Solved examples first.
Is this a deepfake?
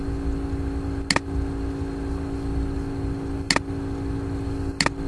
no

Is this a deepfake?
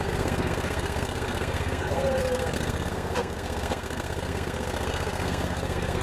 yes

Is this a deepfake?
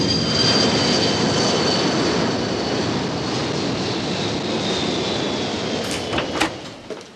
no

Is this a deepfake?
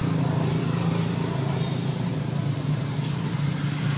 yes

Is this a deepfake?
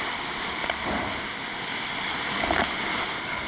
no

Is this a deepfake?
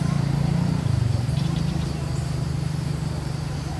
yes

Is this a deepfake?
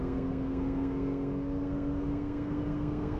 yes